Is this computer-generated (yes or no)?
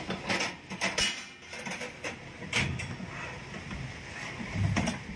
no